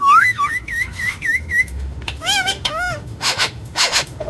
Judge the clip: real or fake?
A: fake